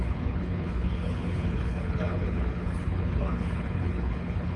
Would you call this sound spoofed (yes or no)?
yes